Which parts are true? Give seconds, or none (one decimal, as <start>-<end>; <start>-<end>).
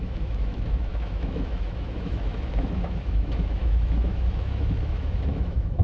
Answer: none